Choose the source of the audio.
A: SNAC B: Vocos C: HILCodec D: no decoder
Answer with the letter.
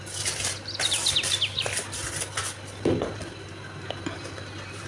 D